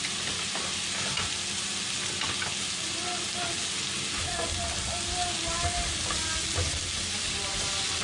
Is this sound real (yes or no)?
yes